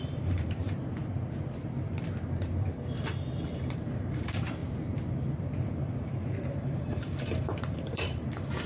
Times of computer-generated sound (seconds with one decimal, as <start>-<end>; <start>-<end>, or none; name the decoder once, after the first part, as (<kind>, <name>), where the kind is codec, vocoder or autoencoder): 0.0-1.0 (vocoder, BigVGAN v2); 2.7-4.6; 5.7-8.7